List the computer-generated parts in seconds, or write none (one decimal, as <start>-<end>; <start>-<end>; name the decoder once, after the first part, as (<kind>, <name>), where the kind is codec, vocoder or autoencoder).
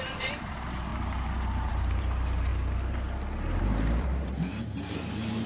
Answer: 0.0-0.9 (vocoder, BigVGAN v2); 1.7-2.5; 3.6-5.5